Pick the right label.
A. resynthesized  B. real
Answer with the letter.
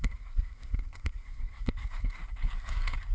A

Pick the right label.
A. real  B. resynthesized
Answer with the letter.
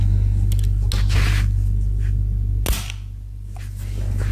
A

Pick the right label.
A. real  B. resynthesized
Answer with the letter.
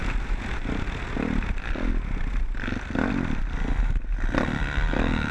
A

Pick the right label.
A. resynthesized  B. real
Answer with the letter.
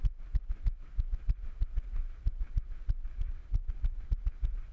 B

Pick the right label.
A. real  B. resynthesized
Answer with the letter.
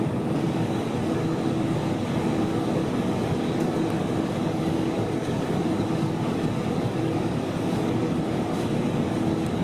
B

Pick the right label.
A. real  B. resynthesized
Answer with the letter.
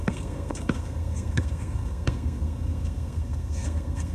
B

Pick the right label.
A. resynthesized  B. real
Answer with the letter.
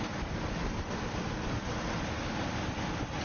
B